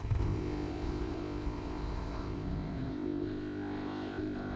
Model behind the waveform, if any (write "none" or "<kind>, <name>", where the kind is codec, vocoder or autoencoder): codec, ZipCodec